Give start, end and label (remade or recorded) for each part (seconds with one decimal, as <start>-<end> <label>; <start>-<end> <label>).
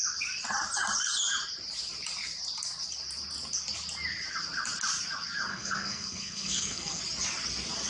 0.0-5.5 recorded; 5.5-7.0 remade; 7.0-7.9 recorded